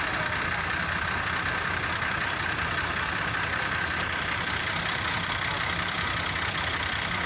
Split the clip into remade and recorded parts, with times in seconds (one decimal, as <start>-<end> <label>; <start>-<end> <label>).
0.0-7.3 recorded